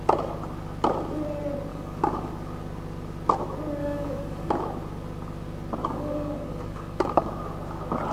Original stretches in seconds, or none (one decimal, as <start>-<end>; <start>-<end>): 0.0-1.7; 2.3-3.8; 4.5-5.8; 7.4-8.1